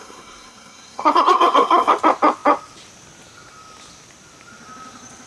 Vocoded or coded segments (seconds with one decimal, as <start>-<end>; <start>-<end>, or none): 0.0-1.9